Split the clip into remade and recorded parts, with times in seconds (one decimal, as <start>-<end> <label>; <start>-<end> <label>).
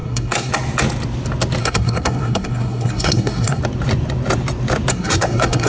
0.0-0.5 remade; 0.5-1.6 recorded; 1.6-3.6 remade; 3.6-4.9 recorded; 4.9-5.7 remade